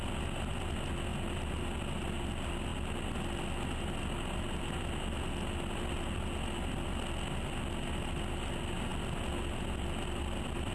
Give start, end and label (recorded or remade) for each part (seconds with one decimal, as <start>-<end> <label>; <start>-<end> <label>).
0.0-10.7 recorded